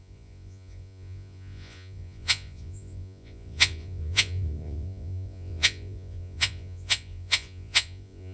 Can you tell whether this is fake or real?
fake